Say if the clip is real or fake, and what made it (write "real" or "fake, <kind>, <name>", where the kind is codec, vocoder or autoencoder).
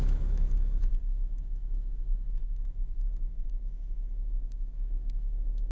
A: fake, autoencoder, DAC-VAE